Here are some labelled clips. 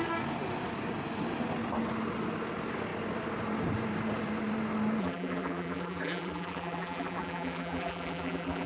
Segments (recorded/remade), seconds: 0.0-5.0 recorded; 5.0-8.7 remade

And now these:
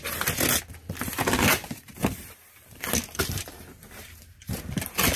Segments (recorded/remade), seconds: 0.0-1.5 recorded; 1.5-4.6 remade; 4.6-5.2 recorded

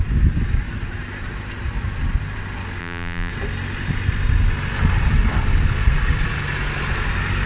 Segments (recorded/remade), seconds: 0.0-2.8 recorded; 2.8-3.3 remade; 3.3-7.5 recorded

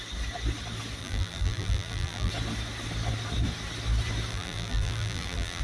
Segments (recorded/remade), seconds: 0.0-1.0 recorded; 1.0-2.3 remade; 2.3-4.3 recorded; 4.3-5.6 remade

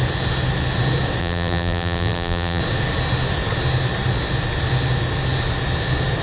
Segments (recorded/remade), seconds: 0.0-1.2 recorded; 1.2-2.6 remade; 2.6-6.2 recorded

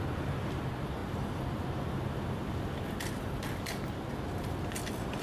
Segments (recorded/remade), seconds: 0.0-5.2 recorded

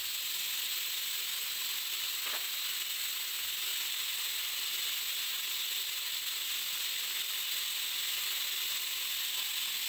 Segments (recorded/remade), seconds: 0.0-3.7 recorded; 3.7-4.2 remade; 4.2-9.9 recorded

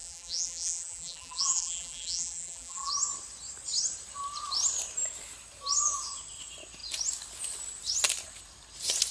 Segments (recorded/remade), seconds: 0.0-2.9 remade; 2.9-9.1 recorded